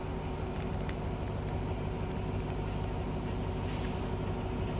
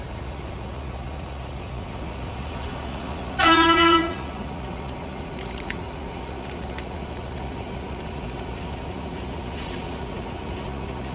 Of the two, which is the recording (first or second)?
first